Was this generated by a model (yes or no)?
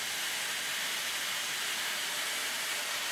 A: no